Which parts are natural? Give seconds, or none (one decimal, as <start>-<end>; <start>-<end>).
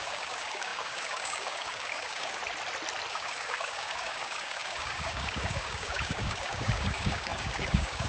2.4-3.1